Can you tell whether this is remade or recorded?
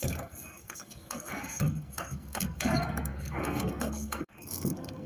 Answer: remade